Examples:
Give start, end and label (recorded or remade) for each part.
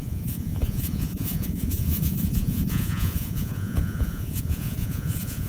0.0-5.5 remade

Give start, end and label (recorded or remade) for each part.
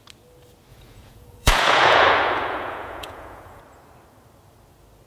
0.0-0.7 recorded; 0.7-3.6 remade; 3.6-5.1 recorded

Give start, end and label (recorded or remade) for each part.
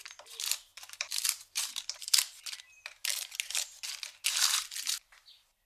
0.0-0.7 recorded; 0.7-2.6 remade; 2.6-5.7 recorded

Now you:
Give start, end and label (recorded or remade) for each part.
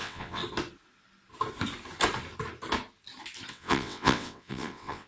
0.0-0.4 remade; 0.4-3.5 recorded; 3.5-5.1 remade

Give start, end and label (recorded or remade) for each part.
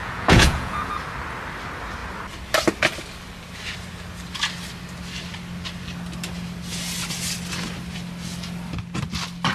0.0-0.9 remade; 0.9-9.5 recorded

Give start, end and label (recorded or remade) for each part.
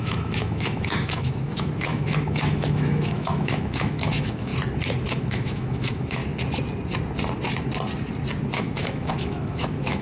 0.0-4.5 remade; 4.5-5.1 recorded; 5.1-6.2 remade; 6.2-8.6 recorded; 8.6-10.0 remade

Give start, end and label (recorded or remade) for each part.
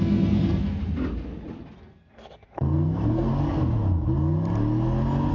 0.0-0.8 remade; 0.8-1.8 recorded; 1.8-3.3 remade; 3.3-5.3 recorded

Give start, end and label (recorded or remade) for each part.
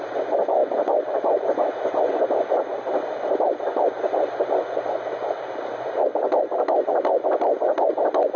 0.0-8.4 recorded